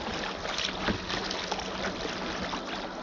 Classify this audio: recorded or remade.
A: recorded